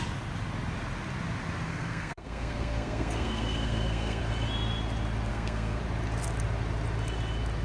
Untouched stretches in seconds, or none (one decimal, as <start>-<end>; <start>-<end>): 0.0-1.7; 4.2-5.3; 5.8-7.6